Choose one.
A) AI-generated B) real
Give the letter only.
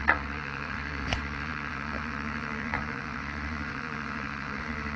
A